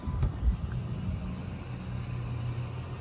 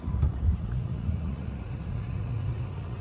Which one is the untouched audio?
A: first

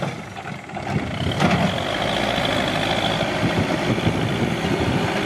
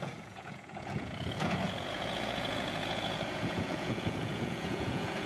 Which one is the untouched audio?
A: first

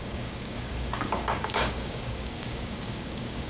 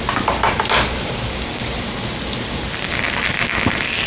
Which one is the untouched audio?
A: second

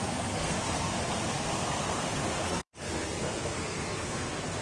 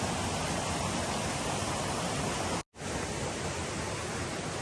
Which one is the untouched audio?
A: second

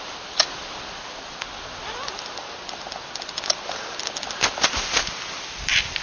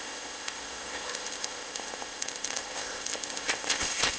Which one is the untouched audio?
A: first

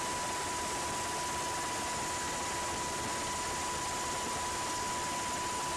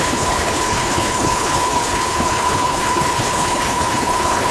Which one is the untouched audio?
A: first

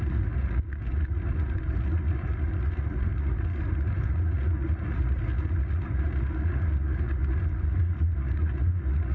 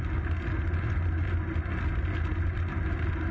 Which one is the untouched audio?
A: second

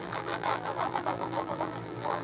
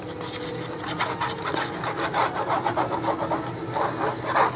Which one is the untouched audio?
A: second